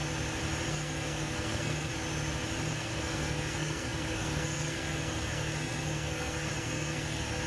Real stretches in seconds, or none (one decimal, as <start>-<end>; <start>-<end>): 0.0-0.7; 1.9-2.7